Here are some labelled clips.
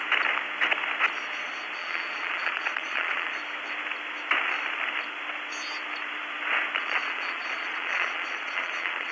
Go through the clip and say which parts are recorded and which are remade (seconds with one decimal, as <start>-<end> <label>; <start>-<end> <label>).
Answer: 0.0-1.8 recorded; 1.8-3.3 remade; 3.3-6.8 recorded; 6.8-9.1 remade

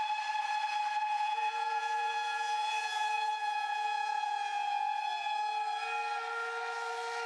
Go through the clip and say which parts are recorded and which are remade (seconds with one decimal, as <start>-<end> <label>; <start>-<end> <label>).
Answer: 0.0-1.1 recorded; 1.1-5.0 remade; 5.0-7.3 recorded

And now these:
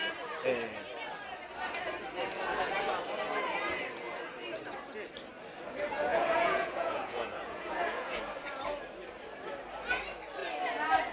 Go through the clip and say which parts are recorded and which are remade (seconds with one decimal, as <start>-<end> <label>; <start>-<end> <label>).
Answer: 0.0-6.1 recorded; 6.1-8.2 remade; 8.2-11.1 recorded

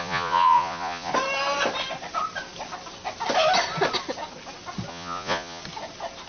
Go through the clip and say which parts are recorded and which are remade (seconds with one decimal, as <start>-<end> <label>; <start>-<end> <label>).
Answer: 0.0-1.1 remade; 1.1-4.9 recorded; 4.9-5.6 remade; 5.6-6.3 recorded

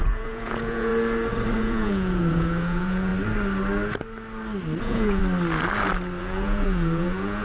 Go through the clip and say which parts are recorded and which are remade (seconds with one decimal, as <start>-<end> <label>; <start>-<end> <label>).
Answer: 0.0-0.9 remade; 0.9-1.6 recorded; 1.6-3.1 remade; 3.1-4.8 recorded; 4.8-5.2 remade; 5.2-6.2 recorded; 6.2-7.4 remade

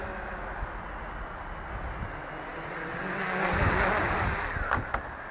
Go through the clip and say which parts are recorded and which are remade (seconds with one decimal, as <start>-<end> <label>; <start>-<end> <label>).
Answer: 0.0-5.3 recorded

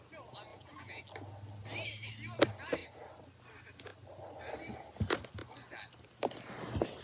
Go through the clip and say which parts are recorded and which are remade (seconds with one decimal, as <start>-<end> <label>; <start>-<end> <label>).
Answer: 0.0-0.5 recorded; 0.5-1.0 remade; 1.0-7.0 recorded